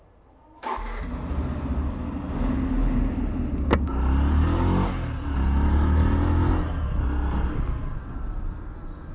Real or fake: real